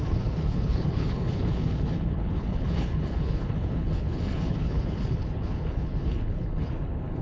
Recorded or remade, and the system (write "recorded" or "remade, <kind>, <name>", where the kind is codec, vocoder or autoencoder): remade, codec, HILCodec